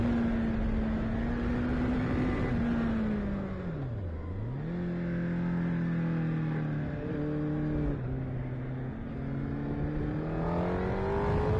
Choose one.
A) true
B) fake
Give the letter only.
A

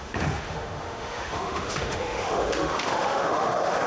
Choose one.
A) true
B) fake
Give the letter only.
B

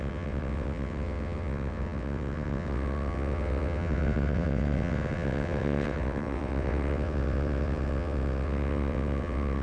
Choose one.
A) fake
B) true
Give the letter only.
A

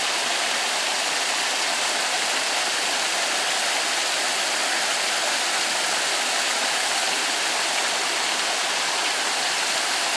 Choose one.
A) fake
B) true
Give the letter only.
B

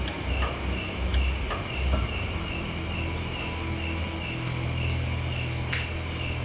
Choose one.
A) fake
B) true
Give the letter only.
B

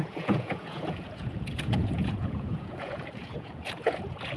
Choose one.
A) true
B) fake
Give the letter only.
B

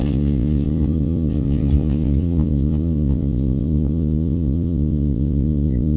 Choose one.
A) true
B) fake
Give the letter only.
B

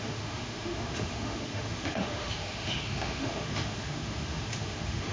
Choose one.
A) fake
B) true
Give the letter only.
A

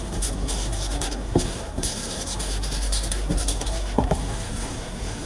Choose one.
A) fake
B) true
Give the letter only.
A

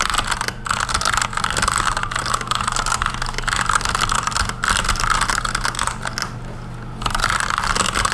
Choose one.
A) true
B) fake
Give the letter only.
A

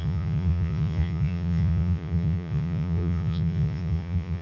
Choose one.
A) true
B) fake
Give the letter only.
B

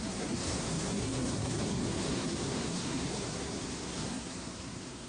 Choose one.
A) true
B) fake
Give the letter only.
B